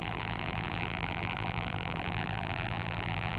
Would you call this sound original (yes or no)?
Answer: no